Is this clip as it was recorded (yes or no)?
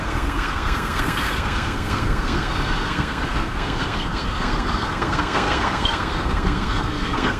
no